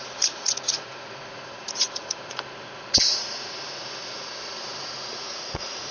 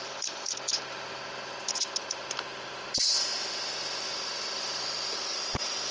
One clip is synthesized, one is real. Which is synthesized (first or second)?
first